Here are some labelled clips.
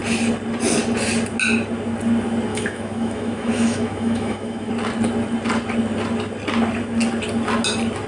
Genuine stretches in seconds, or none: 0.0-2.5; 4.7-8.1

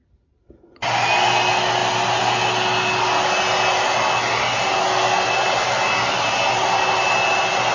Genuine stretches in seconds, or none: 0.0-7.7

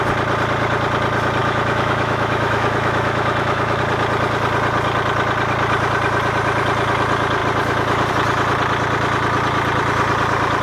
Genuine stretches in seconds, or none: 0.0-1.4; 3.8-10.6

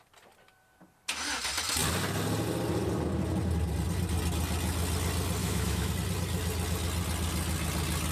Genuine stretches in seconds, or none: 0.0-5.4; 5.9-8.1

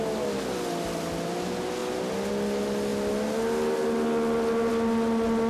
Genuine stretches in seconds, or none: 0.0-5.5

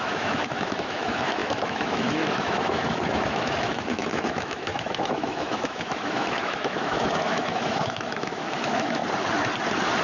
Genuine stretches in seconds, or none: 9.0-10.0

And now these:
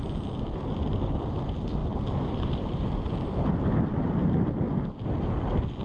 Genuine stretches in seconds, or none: 0.0-5.8